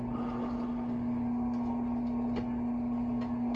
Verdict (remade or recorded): recorded